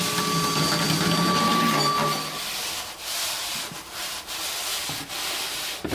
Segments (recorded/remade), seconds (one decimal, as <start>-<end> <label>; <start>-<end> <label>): 0.0-5.9 recorded